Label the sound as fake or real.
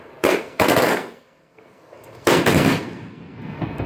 fake